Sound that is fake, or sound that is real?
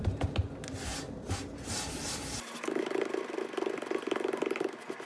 real